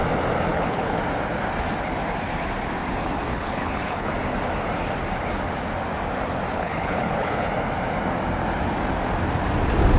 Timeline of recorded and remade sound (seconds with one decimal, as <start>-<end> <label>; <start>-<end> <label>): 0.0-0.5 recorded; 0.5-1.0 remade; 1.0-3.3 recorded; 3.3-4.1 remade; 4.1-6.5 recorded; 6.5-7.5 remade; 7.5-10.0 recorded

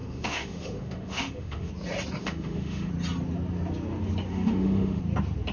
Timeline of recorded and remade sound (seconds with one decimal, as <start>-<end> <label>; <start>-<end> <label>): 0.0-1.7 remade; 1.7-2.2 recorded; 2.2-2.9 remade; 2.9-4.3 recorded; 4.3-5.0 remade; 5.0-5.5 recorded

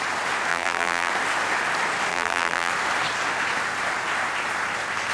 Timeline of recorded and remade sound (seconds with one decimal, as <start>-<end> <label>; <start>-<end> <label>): 0.0-0.5 recorded; 0.5-1.1 remade; 1.1-2.1 recorded; 2.1-2.7 remade; 2.7-5.1 recorded

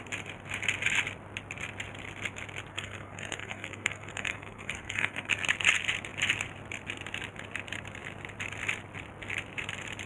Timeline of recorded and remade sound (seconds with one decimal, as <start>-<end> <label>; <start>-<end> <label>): 0.0-2.7 recorded; 2.7-5.3 remade; 5.3-10.1 recorded